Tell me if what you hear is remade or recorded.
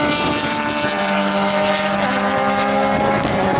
recorded